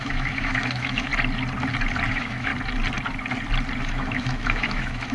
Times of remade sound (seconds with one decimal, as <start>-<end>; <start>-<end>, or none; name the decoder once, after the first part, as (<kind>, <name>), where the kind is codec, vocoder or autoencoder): 0.0-1.1 (autoencoder, DAC-VAE); 2.1-2.5; 3.8-5.1